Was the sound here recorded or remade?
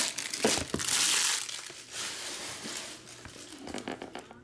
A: recorded